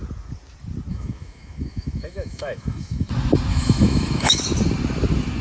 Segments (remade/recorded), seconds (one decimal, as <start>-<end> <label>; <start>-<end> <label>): 0.0-0.9 recorded; 0.9-3.1 remade; 3.1-3.5 recorded; 3.5-4.4 remade; 4.4-5.4 recorded